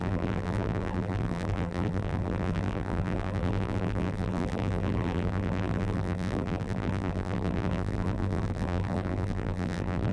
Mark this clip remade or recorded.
remade